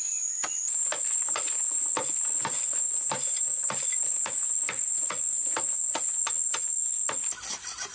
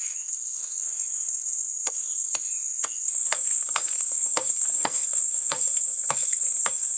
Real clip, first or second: first